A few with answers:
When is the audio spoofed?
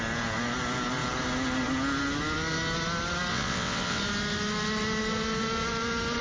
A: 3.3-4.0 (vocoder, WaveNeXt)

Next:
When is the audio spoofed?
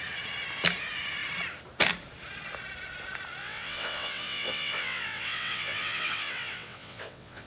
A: 3.4-7.5 (vocoder, WaveNeXt)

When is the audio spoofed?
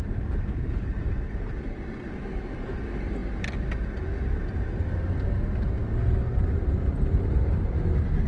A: none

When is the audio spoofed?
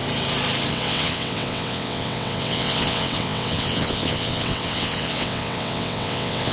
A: 0.7-6.5 (vocoder, WaveNeXt)